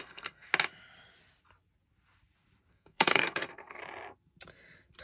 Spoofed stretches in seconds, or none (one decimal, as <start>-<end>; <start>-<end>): 0.0-0.5; 2.7-3.8

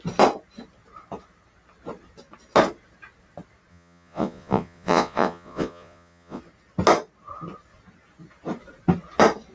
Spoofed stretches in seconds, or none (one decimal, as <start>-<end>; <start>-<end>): 3.7-6.4

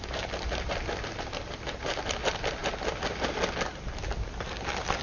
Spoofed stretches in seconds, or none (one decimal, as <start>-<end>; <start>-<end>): none

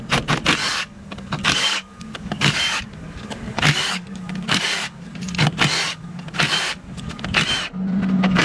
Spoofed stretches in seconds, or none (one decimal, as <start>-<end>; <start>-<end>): 0.6-5.1; 5.9-7.2

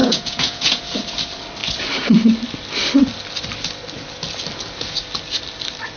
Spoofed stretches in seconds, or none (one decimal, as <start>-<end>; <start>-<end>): 0.0-0.8

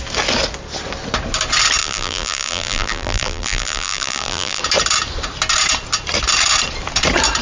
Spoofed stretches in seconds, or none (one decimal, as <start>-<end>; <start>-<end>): 1.8-4.6

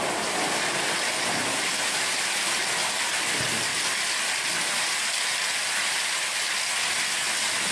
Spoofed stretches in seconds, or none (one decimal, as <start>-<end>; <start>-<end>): none

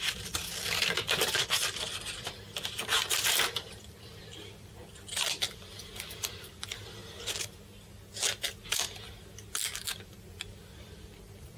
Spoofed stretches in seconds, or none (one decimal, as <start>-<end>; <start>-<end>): 0.0-7.0; 10.7-11.6